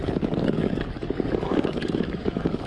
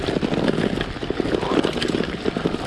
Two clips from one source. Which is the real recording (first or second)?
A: second